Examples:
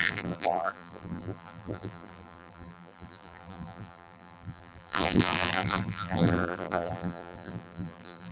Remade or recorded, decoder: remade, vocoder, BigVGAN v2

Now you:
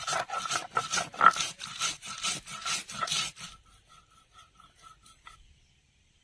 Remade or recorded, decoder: recorded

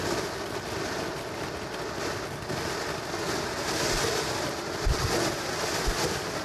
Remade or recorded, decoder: recorded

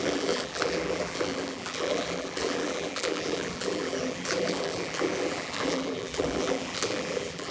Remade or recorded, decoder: remade, vocoder, BigVGAN v2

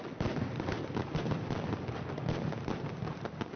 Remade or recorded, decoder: recorded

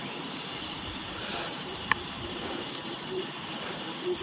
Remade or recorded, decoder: remade, vocoder, BigVGAN v2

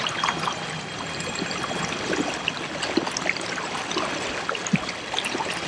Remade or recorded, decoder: recorded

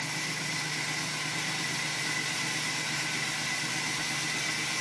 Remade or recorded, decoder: recorded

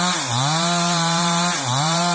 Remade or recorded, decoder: remade, vocoder, BigVGAN v2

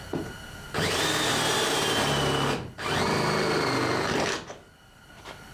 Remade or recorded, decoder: recorded